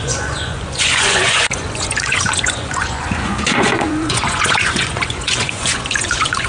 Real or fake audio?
fake